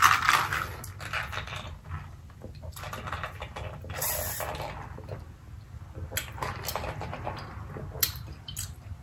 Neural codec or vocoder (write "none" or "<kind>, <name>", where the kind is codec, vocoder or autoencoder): none